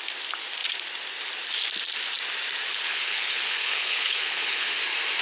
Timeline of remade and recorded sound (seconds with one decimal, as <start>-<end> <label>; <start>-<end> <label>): 0.0-2.7 recorded; 2.7-4.7 remade; 4.7-5.2 recorded